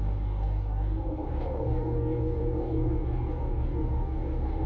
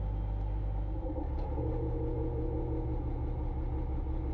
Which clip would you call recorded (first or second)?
second